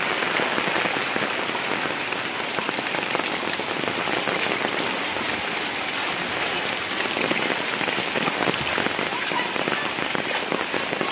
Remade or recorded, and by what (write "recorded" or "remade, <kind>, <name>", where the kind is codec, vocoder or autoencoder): recorded